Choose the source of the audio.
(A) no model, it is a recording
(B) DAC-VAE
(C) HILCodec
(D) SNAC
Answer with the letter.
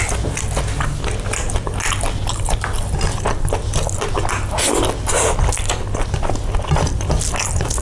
A